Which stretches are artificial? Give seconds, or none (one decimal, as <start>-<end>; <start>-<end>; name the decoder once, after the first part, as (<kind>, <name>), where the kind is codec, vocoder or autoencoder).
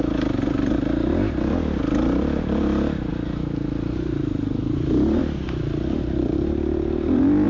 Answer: none